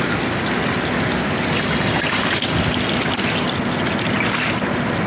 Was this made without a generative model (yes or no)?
yes